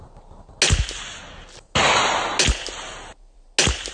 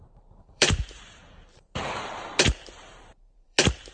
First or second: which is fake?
second